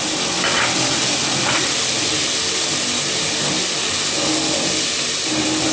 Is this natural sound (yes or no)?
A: yes